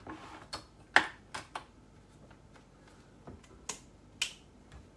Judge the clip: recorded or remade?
recorded